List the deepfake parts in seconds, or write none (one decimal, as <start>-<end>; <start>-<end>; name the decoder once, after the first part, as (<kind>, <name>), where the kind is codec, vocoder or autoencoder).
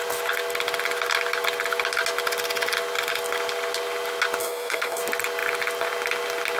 4.4-5.0 (codec, SNAC)